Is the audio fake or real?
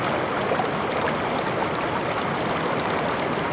real